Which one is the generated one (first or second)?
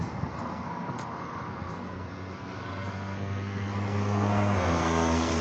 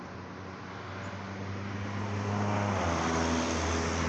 first